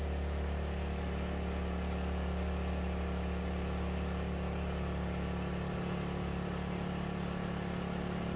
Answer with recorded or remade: recorded